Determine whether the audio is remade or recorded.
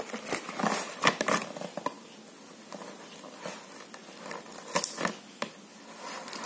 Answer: recorded